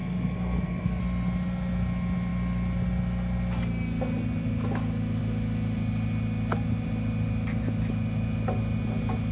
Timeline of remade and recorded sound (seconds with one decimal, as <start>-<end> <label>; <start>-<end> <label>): 0.0-1.0 remade; 1.0-9.3 recorded